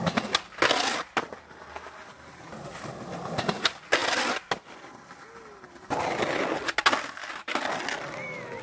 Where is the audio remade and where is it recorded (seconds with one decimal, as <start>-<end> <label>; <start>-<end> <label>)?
0.0-8.6 recorded